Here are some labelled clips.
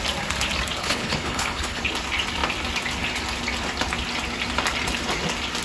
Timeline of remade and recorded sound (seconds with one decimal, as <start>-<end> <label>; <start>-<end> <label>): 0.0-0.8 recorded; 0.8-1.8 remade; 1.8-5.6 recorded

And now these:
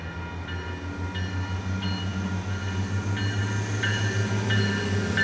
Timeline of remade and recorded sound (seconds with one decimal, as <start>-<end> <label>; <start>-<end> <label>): 0.0-5.2 recorded

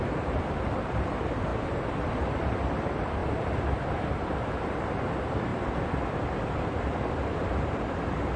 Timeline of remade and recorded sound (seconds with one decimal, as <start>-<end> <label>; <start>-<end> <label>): 0.0-3.2 remade; 3.2-4.3 recorded; 4.3-5.5 remade; 5.5-7.5 recorded; 7.5-8.4 remade

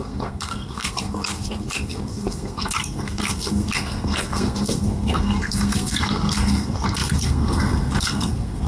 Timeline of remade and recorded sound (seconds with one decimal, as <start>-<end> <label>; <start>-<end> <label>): 0.0-8.7 remade

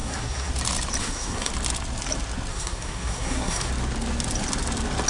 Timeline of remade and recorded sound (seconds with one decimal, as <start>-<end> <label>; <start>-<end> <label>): 0.0-0.5 remade; 0.5-1.0 recorded; 1.0-1.5 remade; 1.5-2.5 recorded; 2.5-3.7 remade; 3.7-5.1 recorded

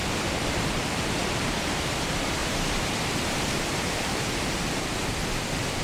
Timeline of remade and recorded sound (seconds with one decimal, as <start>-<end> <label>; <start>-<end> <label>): 0.0-1.5 remade; 1.5-2.4 recorded; 2.4-4.3 remade; 4.3-5.8 recorded